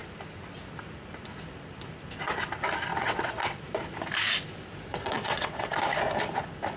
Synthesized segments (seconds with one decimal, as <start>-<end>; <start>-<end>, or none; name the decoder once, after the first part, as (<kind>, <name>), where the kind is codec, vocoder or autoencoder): 2.9-3.6 (vocoder, WaveNeXt); 4.9-5.7